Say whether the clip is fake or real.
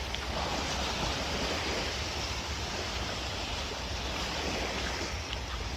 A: real